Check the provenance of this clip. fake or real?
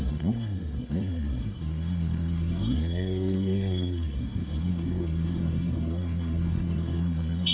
fake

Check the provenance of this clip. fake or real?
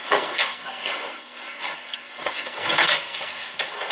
fake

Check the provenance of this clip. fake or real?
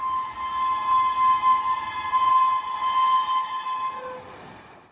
real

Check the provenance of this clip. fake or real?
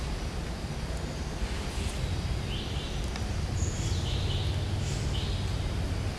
real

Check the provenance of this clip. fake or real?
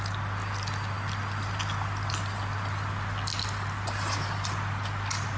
real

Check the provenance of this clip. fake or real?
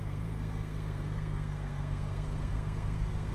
fake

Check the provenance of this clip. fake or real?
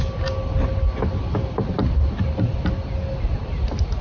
real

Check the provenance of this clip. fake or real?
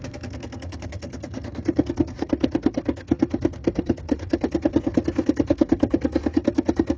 fake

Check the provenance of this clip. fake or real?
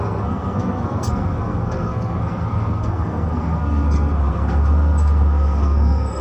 fake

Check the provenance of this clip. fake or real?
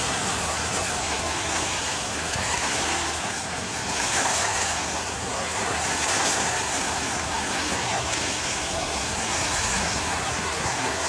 fake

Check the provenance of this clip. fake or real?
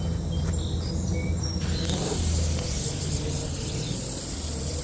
real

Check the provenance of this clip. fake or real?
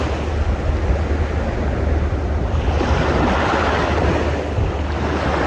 real